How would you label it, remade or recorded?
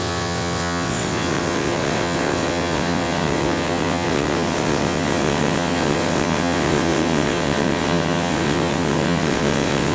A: remade